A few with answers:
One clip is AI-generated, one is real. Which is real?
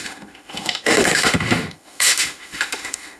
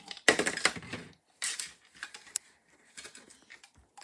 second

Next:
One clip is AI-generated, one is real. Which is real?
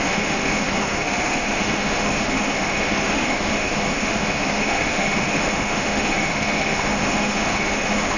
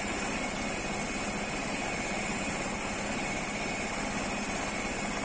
second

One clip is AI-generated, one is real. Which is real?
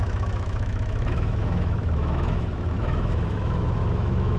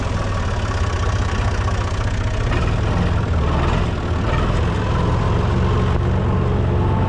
second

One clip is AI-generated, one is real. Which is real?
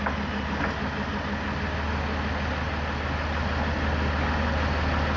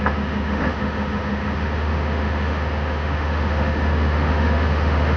first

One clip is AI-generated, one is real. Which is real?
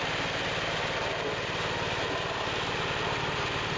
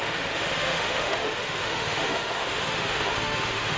first